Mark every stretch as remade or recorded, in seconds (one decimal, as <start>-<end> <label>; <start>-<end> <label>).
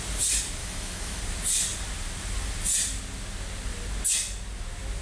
0.0-0.6 recorded; 0.6-1.2 remade; 1.2-5.0 recorded